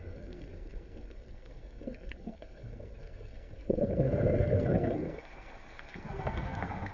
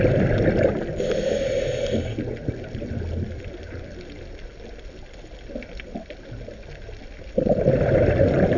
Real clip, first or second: second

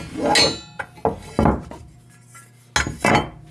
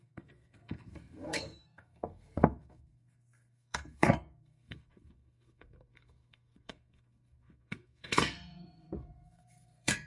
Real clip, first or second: first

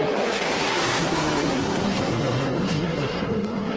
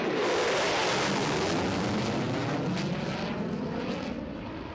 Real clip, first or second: second